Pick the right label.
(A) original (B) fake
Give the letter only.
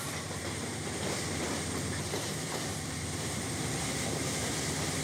B